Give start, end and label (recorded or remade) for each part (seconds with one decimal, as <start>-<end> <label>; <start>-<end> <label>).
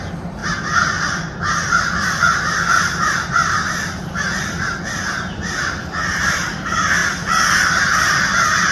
0.0-0.4 recorded; 0.4-1.4 remade; 1.4-8.7 recorded